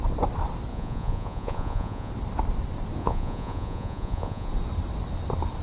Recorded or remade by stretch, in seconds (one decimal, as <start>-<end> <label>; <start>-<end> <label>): 0.0-0.7 recorded; 0.7-2.1 remade; 2.1-3.0 recorded; 3.0-4.5 remade; 4.5-5.6 recorded